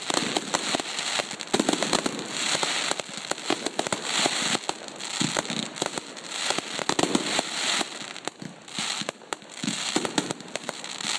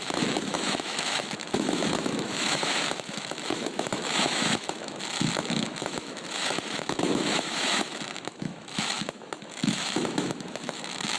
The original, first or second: first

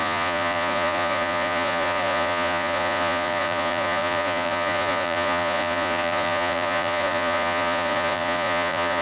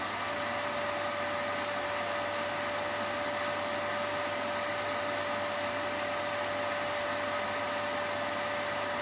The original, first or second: second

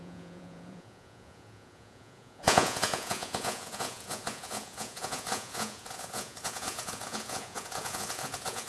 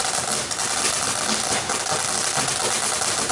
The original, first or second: second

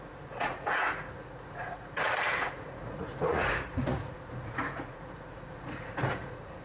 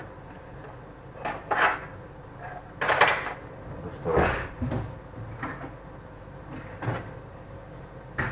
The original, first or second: second